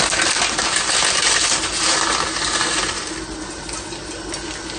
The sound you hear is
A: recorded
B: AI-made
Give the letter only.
A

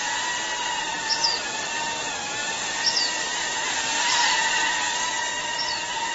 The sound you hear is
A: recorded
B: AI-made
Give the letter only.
A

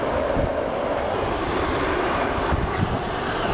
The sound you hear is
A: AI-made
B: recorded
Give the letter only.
B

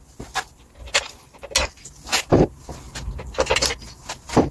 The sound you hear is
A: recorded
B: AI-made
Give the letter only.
A